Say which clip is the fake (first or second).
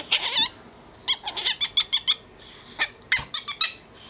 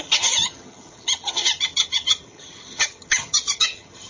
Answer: second